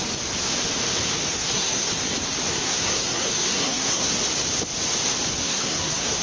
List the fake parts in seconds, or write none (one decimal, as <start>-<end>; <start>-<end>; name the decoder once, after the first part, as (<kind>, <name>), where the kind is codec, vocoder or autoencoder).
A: 1.3-1.9 (codec, SNAC); 2.5-4.1; 5.4-6.2